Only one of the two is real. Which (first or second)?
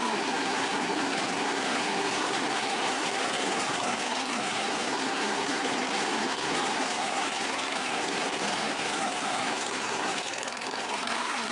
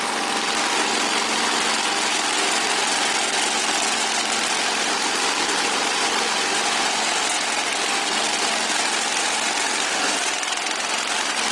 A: second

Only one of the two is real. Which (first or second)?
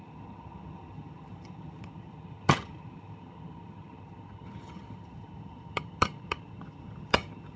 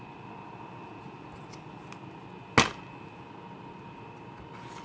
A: second